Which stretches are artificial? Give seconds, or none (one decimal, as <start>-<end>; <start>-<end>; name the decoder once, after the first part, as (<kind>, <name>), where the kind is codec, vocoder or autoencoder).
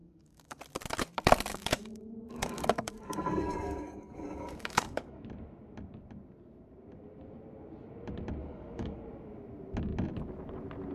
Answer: 0.0-0.6 (codec, DAC); 1.5-5.3; 8.4-9.0